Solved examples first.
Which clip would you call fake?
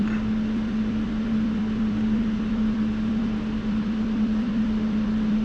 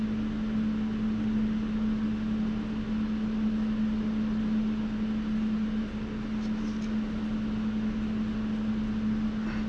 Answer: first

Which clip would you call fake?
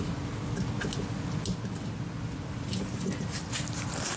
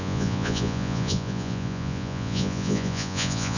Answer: second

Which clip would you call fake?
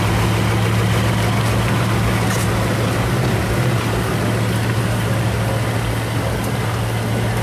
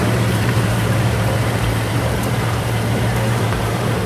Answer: second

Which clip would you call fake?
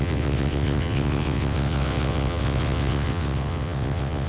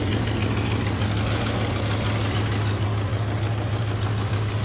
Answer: first